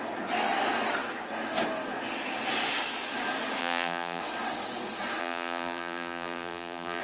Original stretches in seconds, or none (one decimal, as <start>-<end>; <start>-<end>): 0.0-3.6; 4.2-5.2

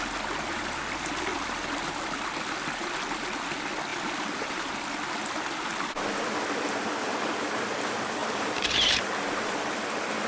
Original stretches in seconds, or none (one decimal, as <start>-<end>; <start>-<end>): 0.0-3.9; 4.7-8.2; 9.0-10.3

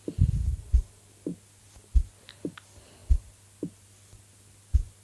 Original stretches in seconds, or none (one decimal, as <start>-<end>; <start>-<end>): 0.0-5.0

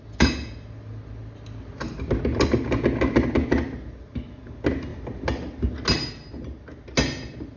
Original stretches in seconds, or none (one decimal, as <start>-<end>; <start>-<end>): 0.0-7.6